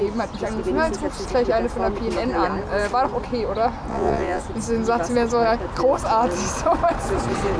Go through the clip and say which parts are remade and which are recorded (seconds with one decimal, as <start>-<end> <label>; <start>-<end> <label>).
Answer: 0.0-3.9 recorded; 3.9-4.4 remade; 4.4-7.6 recorded